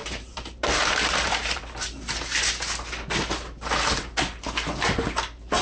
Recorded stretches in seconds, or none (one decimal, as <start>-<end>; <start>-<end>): 1.6-5.6